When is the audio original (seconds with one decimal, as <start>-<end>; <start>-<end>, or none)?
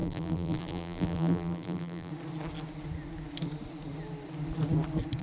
2.1-5.2